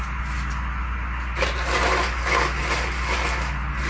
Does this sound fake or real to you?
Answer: real